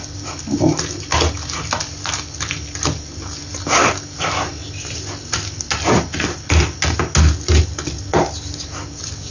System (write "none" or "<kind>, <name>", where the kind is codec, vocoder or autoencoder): none